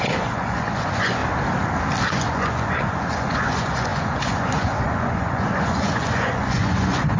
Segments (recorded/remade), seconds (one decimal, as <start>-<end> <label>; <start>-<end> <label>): 0.0-1.2 remade; 1.2-2.1 recorded; 2.1-7.2 remade